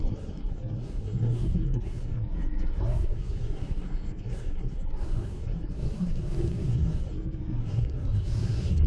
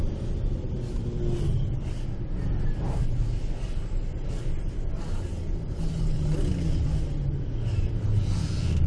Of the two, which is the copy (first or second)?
first